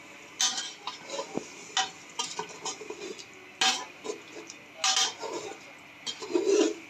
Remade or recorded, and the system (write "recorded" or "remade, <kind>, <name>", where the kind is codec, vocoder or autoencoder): recorded